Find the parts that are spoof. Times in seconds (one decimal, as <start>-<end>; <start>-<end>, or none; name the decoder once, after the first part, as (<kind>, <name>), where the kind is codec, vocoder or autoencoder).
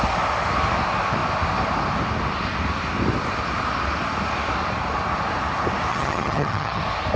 5.9-6.8 (vocoder, HiFi-GAN)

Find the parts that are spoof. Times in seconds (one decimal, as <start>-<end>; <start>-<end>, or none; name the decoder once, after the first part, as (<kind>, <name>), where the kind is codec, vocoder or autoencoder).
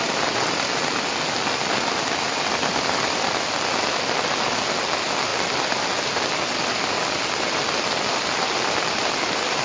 none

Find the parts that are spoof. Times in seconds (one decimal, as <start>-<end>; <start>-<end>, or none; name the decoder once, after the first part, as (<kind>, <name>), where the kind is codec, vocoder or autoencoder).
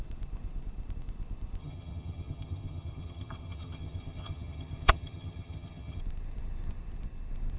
1.6-6.0 (vocoder, HiFi-GAN)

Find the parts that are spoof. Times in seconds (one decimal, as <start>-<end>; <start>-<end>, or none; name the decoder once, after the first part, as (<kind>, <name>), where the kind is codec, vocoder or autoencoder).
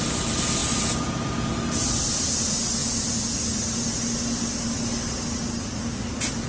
none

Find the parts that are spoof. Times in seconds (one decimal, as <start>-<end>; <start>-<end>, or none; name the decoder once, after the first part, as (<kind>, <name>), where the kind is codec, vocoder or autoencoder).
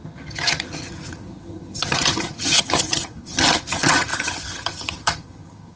0.0-5.8 (vocoder, HiFi-GAN)